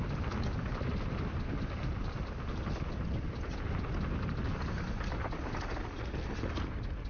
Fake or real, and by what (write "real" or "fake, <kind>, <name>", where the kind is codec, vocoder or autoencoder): real